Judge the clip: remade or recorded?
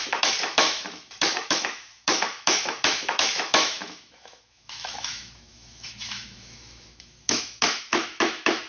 remade